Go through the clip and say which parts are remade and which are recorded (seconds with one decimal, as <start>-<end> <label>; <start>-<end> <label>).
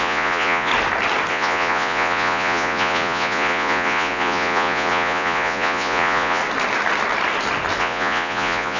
0.0-0.7 remade; 0.7-1.3 recorded; 1.3-6.4 remade; 6.4-7.8 recorded; 7.8-8.8 remade